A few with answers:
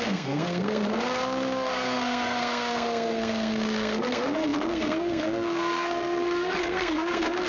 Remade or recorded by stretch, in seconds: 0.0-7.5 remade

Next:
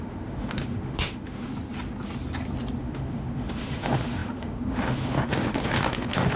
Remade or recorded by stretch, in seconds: 0.0-1.5 remade; 1.5-2.8 recorded; 2.8-6.4 remade

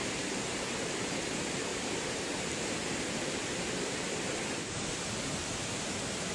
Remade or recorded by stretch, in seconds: 0.0-0.9 remade; 0.9-1.7 recorded; 1.7-5.5 remade; 5.5-6.3 recorded